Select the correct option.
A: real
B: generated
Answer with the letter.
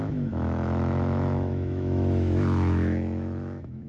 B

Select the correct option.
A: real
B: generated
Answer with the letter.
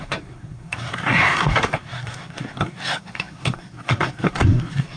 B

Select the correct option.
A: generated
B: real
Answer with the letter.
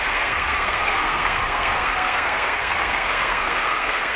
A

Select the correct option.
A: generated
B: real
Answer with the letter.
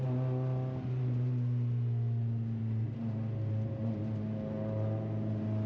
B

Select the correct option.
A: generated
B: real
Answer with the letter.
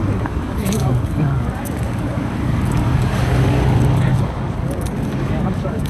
A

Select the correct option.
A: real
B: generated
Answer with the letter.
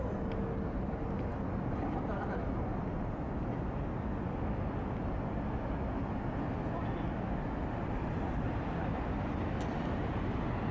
A